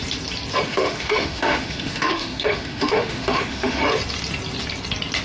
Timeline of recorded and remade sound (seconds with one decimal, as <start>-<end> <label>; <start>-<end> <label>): 0.0-0.7 recorded; 0.7-3.8 remade; 3.8-5.2 recorded